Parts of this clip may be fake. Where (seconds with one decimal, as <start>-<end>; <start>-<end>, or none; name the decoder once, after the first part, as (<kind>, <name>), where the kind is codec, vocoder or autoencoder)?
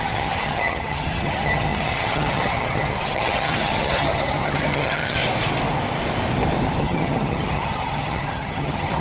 0.0-5.2 (vocoder, HiFi-GAN); 6.8-9.0